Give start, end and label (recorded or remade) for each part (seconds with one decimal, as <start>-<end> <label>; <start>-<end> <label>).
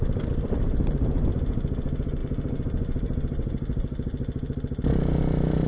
0.0-5.7 recorded